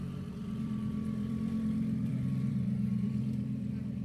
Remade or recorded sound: remade